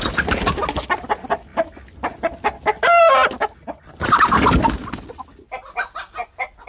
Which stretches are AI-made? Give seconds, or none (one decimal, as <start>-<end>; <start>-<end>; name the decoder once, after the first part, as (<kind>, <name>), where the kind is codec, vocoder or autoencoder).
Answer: none